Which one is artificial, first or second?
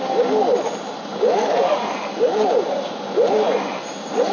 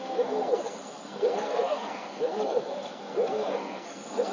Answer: second